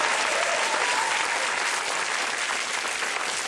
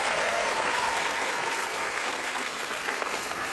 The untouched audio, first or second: first